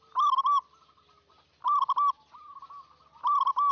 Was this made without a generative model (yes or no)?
yes